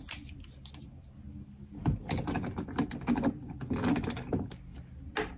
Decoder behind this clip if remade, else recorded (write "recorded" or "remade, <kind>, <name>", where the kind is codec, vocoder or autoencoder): recorded